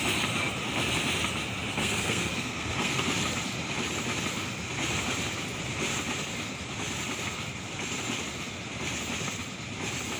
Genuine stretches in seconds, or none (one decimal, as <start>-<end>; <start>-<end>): 0.0-1.7; 3.1-10.2